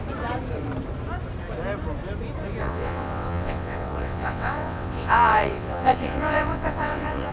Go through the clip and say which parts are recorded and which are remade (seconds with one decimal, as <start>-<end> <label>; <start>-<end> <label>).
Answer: 0.0-2.6 recorded; 2.6-7.3 remade